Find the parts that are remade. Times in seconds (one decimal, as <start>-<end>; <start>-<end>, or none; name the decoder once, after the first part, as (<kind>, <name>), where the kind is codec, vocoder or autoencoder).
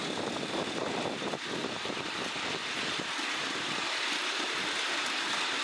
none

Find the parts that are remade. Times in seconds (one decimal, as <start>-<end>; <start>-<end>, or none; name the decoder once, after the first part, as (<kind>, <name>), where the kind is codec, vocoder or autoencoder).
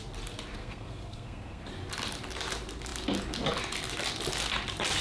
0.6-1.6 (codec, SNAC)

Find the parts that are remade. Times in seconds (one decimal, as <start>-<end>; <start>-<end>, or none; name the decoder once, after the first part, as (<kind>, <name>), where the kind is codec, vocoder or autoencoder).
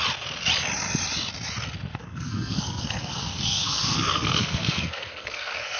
1.9-5.8 (codec, SNAC)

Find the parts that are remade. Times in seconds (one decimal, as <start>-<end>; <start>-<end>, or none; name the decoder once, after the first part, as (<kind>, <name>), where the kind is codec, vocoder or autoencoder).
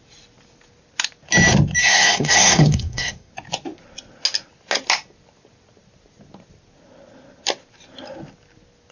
1.8-3.3 (codec, SNAC)